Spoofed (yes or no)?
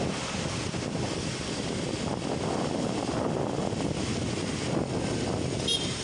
no